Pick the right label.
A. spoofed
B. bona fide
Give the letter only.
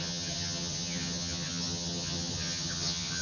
A